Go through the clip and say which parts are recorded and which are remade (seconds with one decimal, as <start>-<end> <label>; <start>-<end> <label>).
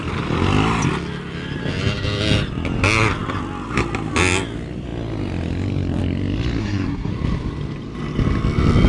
0.0-6.6 recorded; 6.6-7.1 remade; 7.1-8.9 recorded